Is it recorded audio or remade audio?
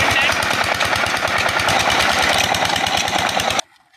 recorded